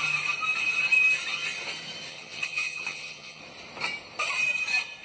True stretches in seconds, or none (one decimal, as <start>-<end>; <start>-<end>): 0.0-2.1; 3.4-5.0